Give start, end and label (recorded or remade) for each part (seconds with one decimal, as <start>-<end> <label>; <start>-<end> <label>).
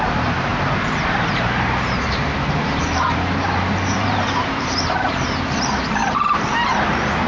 0.0-7.3 remade